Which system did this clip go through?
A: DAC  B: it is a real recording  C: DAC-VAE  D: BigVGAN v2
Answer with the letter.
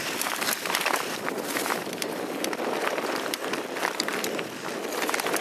B